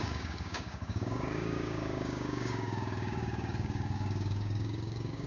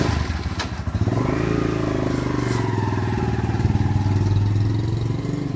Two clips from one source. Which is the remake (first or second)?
first